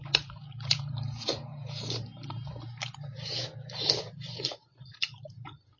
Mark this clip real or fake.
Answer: fake